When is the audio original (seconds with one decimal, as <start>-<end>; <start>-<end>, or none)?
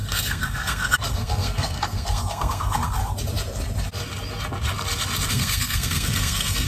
3.0-5.3